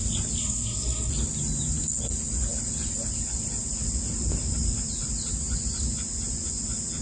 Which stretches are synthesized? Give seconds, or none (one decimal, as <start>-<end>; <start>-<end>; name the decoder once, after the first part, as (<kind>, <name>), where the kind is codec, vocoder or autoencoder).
0.4-1.1 (codec, SNAC)